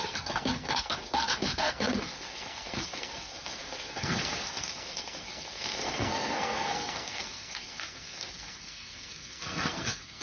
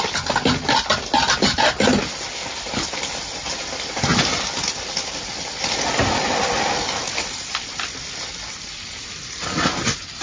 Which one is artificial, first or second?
first